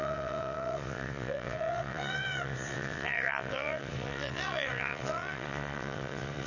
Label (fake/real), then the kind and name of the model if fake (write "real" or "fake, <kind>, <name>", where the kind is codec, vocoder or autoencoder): fake, vocoder, WaveNeXt